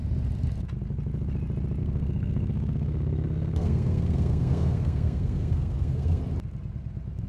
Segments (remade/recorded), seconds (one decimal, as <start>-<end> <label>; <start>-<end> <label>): 0.0-1.8 recorded; 1.8-6.2 remade; 6.2-7.3 recorded